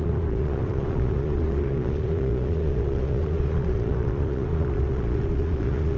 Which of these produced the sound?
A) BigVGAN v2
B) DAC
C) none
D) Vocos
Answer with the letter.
D